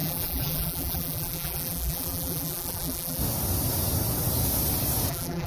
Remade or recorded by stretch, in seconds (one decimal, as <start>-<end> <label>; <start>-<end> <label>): 0.0-3.2 remade; 3.2-5.1 recorded; 5.1-5.5 remade